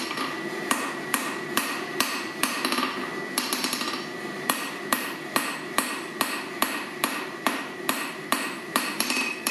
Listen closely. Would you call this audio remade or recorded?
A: remade